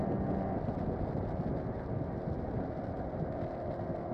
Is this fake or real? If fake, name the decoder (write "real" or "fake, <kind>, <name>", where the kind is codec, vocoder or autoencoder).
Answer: real